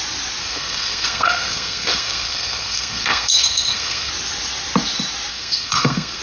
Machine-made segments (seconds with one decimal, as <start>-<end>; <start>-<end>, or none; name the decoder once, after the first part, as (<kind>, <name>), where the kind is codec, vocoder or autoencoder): 0.4-4.1 (codec, SNAC); 5.3-6.2